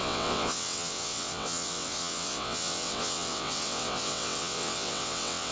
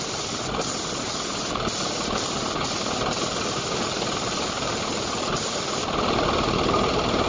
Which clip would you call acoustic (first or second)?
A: second